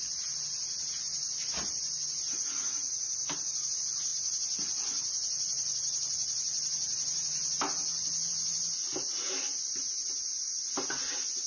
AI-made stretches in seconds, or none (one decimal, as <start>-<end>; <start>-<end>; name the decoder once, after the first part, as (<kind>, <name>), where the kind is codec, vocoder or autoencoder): none